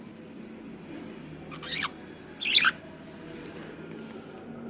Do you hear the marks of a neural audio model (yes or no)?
no